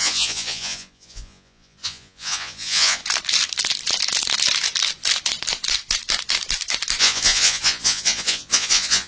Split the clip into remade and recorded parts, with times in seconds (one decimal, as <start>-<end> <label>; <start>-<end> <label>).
0.0-3.0 remade; 3.0-7.0 recorded; 7.0-9.1 remade